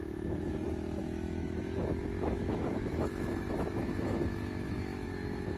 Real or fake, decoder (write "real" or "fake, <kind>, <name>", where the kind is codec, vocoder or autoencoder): fake, autoencoder, DAC-VAE